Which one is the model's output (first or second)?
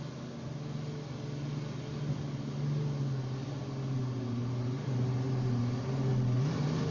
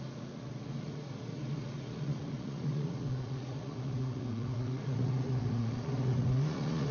second